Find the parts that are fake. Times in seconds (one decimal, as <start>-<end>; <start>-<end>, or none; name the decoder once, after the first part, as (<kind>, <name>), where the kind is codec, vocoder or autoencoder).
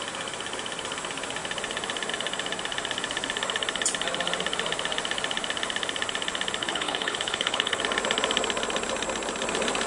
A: 6.6-7.8 (codec, HILCodec)